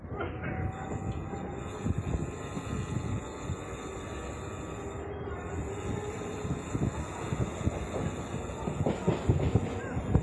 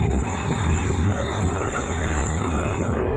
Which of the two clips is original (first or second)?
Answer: first